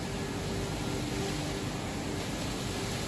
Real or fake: real